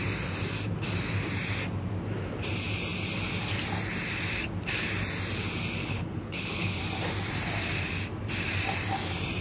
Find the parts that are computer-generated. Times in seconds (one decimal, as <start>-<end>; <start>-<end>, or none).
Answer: 5.8-6.8